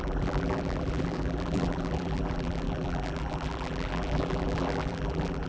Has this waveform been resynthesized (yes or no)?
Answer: yes